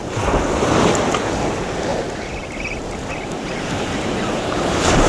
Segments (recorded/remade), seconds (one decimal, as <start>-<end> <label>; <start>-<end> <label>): 0.0-1.9 recorded; 1.9-5.1 remade

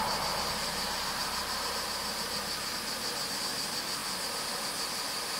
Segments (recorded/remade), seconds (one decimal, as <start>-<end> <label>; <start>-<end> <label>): 0.0-1.2 recorded; 1.2-2.4 remade; 2.4-4.0 recorded; 4.0-4.7 remade; 4.7-5.4 recorded

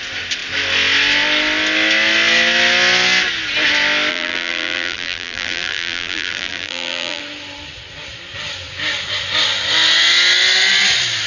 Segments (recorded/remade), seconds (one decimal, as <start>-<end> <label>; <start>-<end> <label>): 0.0-4.1 recorded; 4.1-7.2 remade; 7.2-11.3 recorded

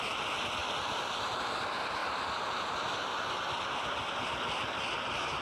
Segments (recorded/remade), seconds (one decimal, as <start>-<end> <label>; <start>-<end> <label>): 0.0-0.6 remade; 0.6-1.3 recorded; 1.3-2.0 remade; 2.0-4.9 recorded; 4.9-5.4 remade

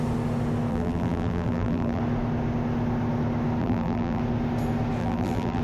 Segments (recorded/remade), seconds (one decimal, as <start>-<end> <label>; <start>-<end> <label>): 0.0-0.7 recorded; 0.7-2.0 remade; 2.0-3.6 recorded; 3.6-4.2 remade; 4.2-5.0 recorded; 5.0-5.6 remade

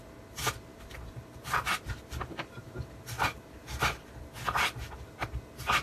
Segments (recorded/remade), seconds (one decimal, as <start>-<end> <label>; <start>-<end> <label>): 0.0-0.7 recorded; 0.7-4.2 remade; 4.2-5.8 recorded